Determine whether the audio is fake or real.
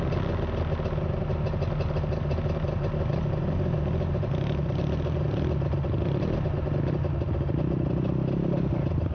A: real